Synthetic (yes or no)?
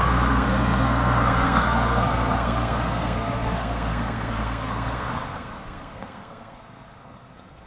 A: yes